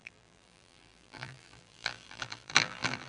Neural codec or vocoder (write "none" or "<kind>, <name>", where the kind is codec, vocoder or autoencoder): vocoder, BigVGAN v2